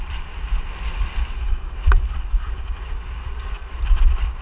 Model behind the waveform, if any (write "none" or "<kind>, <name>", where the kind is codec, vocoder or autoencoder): vocoder, BigVGAN v2